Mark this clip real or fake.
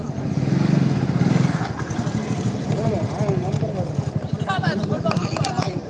real